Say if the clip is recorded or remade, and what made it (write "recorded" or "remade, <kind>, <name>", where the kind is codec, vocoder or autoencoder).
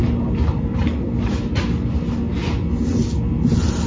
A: recorded